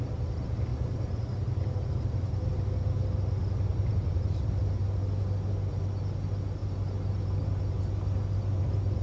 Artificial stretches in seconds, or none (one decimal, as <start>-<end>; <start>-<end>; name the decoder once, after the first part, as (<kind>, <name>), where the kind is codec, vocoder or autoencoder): 0.7-2.5 (vocoder, BigVGAN v2); 3.7-4.5